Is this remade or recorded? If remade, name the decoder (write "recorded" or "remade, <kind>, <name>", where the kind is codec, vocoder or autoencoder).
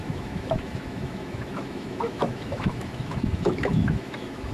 remade, autoencoder, DAC-VAE